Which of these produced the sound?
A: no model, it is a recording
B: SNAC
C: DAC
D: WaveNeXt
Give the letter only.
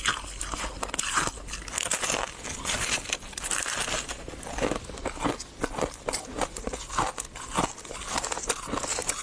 A